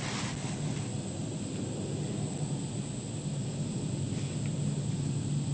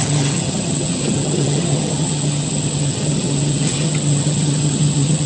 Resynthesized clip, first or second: second